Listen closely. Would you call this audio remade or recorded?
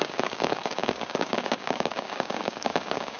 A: remade